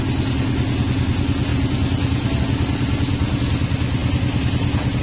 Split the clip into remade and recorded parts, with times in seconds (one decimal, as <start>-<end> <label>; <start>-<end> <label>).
0.0-5.0 recorded